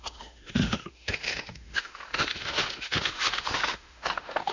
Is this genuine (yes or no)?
no